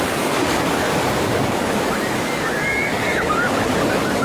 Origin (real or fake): fake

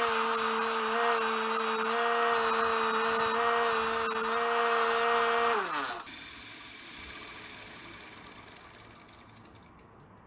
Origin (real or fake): real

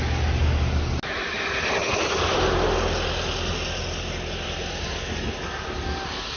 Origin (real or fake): real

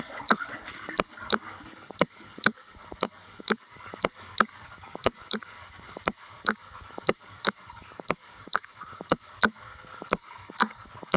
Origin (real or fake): fake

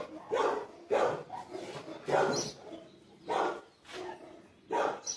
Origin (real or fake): real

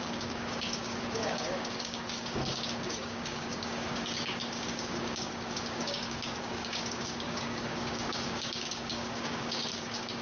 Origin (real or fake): fake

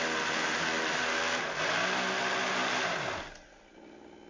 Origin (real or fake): real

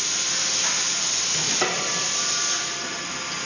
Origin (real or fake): real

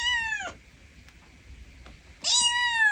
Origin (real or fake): real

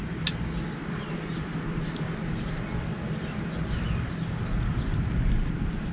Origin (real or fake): real